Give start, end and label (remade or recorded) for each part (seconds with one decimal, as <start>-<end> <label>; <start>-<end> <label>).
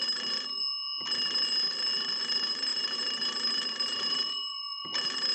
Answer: 0.0-0.6 remade; 0.6-2.2 recorded; 2.2-5.3 remade